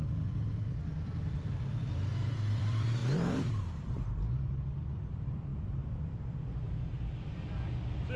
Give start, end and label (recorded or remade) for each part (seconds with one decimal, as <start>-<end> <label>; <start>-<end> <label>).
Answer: 0.0-8.2 remade